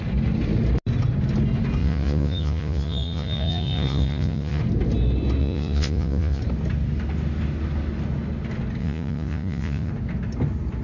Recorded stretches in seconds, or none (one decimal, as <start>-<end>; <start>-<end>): 0.0-1.8; 4.6-5.4; 6.4-8.8; 9.9-10.8